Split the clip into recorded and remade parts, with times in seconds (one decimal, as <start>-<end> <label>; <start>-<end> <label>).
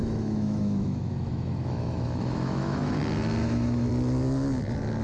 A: 0.0-3.0 remade; 3.0-3.4 recorded; 3.4-3.9 remade; 3.9-5.0 recorded